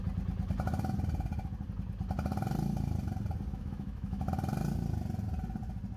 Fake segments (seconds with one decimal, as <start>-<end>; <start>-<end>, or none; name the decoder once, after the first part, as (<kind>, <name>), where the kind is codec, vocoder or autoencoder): 3.5-4.3 (autoencoder, DAC-VAE)